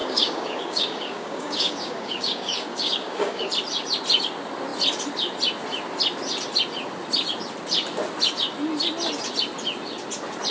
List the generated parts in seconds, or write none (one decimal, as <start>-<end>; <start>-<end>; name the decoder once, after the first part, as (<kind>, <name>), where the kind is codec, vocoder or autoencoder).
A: 0.0-3.5 (codec, DAC)